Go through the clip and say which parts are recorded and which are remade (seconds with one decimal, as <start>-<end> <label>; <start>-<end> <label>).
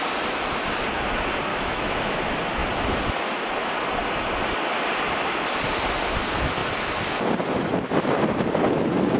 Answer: 0.0-1.5 recorded; 1.5-2.2 remade; 2.2-9.2 recorded